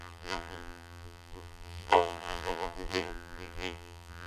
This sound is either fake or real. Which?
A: fake